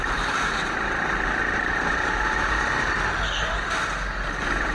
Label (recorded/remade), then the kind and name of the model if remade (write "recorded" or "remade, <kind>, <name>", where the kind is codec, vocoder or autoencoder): recorded